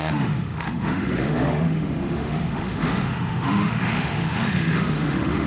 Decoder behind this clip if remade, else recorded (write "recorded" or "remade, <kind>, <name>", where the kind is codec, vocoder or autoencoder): remade, autoencoder, DAC-VAE